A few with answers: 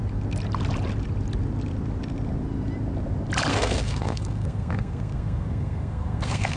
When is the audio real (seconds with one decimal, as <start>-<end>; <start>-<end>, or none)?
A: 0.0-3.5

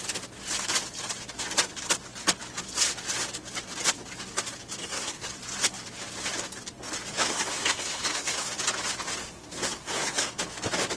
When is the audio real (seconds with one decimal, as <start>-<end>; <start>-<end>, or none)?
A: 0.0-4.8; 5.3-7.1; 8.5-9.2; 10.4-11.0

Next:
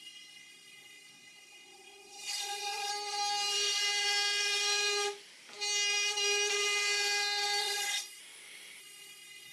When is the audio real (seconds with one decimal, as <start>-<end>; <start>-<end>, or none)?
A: 2.9-7.6; 8.2-8.8

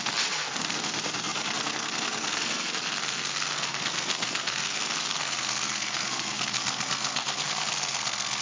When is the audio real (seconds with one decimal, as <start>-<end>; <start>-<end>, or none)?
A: none

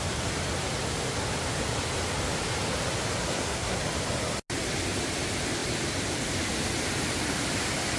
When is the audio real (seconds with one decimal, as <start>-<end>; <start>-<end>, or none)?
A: 0.0-3.3; 3.8-8.0

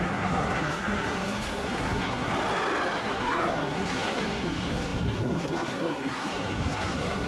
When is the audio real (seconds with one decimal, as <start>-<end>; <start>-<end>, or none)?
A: 2.3-3.0